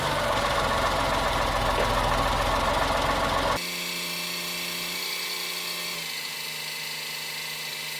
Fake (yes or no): no